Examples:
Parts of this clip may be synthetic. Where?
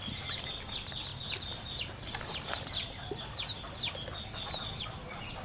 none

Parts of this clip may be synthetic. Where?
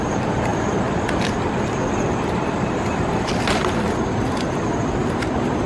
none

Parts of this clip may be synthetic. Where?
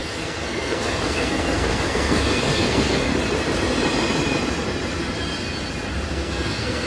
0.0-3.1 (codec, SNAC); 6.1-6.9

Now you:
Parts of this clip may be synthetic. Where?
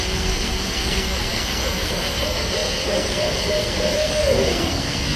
0.0-5.2 (codec, SNAC)